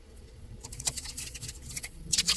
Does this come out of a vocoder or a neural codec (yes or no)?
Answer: yes